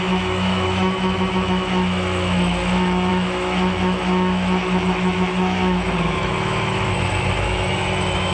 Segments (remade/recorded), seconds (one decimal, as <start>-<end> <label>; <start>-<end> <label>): 0.0-8.3 remade